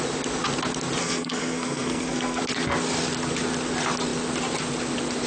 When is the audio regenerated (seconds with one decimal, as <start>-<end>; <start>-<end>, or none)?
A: 1.0-2.4